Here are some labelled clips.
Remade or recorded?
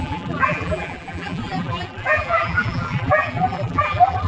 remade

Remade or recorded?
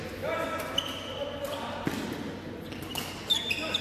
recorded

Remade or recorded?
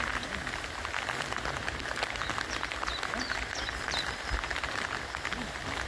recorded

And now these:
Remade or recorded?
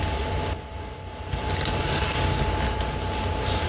recorded